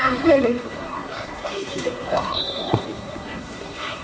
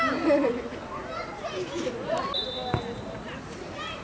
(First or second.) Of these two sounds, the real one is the second